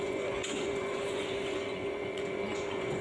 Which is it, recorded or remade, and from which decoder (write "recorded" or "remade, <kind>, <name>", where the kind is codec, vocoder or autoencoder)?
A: remade, vocoder, Vocos